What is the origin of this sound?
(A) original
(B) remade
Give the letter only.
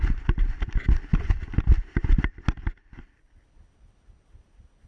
A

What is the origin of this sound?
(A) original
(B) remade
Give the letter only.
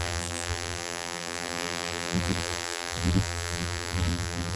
B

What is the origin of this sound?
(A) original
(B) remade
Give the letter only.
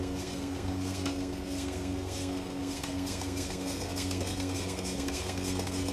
B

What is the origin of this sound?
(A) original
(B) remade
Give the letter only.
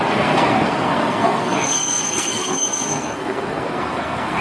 B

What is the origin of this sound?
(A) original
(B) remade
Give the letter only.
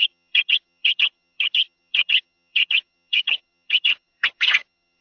B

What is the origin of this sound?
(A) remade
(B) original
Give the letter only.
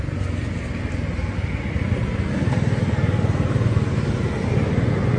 B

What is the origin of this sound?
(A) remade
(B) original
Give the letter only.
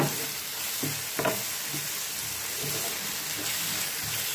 B